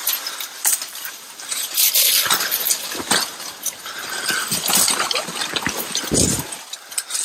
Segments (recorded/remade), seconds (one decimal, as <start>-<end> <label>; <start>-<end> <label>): 0.0-1.8 remade; 1.8-3.3 recorded; 3.3-4.0 remade; 4.0-7.2 recorded